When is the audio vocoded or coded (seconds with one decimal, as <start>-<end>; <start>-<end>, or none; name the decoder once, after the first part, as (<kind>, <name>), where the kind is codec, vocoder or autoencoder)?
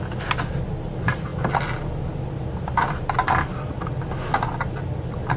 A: none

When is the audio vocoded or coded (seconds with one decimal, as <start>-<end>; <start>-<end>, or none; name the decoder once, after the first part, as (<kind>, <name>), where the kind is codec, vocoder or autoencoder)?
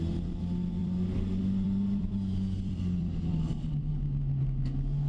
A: 0.8-3.9 (vocoder, BigVGAN v2)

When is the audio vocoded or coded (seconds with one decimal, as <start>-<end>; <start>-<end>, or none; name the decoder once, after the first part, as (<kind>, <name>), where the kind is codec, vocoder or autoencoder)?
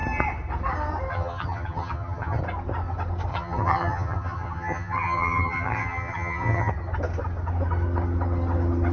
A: 1.1-2.4 (vocoder, HiFi-GAN); 3.3-6.7